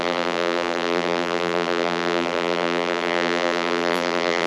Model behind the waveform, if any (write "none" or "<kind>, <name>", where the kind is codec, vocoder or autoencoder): vocoder, BigVGAN v2